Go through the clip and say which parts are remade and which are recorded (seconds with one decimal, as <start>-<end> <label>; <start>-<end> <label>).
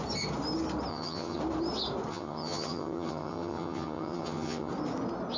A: 0.0-0.9 recorded; 0.9-1.4 remade; 1.4-2.1 recorded; 2.1-4.7 remade; 4.7-5.4 recorded